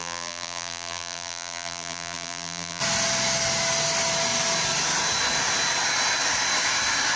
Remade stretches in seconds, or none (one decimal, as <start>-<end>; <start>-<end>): 0.0-2.8